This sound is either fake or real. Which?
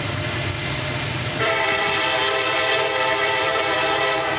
fake